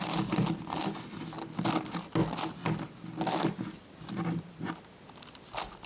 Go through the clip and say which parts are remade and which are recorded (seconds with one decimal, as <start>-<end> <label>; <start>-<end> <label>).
0.0-5.9 recorded